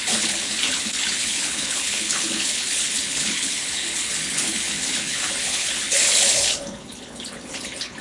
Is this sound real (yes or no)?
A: no